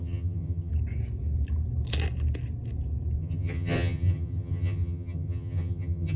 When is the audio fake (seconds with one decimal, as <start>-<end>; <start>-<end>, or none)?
0.0-0.7; 3.2-6.2